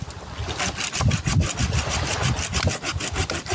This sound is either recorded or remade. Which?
recorded